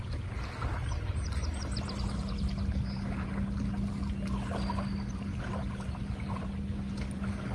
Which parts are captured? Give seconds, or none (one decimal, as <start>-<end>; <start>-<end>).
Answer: 0.0-7.5